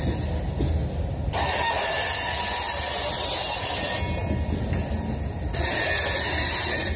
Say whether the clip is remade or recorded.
recorded